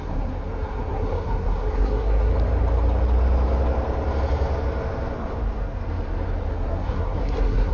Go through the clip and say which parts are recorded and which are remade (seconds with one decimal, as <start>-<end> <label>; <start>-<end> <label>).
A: 0.0-2.3 remade; 2.3-6.5 recorded; 6.5-7.7 remade